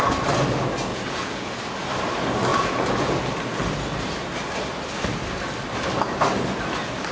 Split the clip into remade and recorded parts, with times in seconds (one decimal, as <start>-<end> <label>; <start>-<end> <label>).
0.0-0.9 recorded; 0.9-1.5 remade; 1.5-2.5 recorded; 2.5-3.2 remade; 3.2-7.1 recorded